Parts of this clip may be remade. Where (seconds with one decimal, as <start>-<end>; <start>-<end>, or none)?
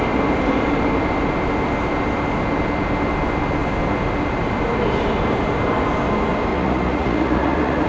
6.5-7.9